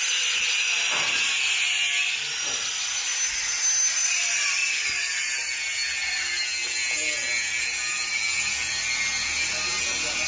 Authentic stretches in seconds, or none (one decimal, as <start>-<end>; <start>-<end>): 0.0-10.3